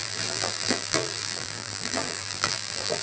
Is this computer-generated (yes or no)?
yes